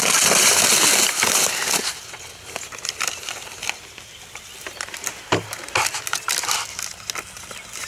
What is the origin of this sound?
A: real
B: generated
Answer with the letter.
A